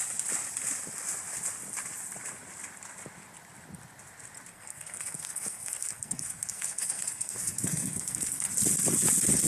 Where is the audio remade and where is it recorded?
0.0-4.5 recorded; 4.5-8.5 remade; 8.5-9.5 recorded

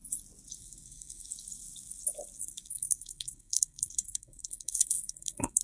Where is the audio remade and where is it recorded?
0.0-0.6 recorded; 0.6-1.3 remade; 1.3-2.4 recorded; 2.4-5.6 remade

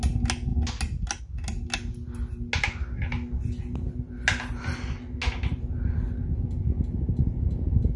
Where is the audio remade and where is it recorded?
0.0-8.0 recorded

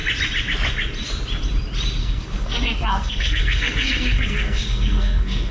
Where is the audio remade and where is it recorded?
0.0-2.0 recorded; 2.0-5.5 remade

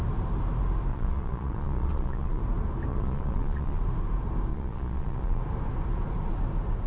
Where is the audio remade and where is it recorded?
0.0-0.9 recorded; 0.9-2.4 remade; 2.4-2.9 recorded; 2.9-3.8 remade; 3.8-4.5 recorded; 4.5-5.4 remade; 5.4-6.9 recorded

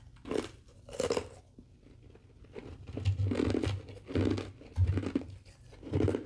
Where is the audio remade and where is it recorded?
0.0-6.3 recorded

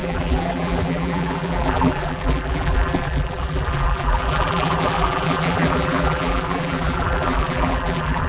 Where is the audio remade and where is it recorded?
0.0-8.3 remade

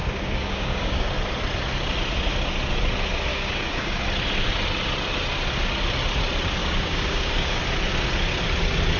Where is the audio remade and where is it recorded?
0.0-1.1 remade; 1.1-3.3 recorded; 3.3-4.0 remade; 4.0-6.6 recorded; 6.6-7.6 remade; 7.6-9.0 recorded